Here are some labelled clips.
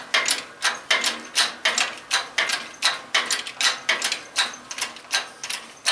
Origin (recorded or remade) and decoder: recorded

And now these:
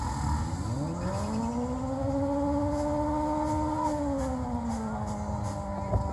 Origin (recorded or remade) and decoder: recorded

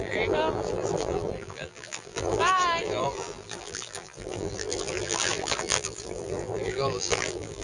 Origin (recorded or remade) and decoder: remade, vocoder, BigVGAN v2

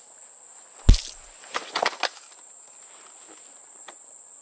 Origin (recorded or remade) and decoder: recorded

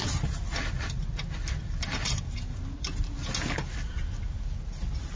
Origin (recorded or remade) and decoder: recorded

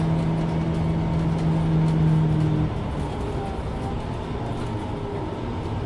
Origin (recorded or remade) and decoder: recorded